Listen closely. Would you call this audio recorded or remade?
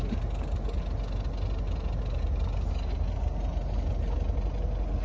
recorded